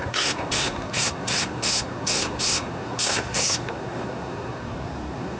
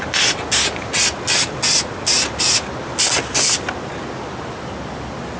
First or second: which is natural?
second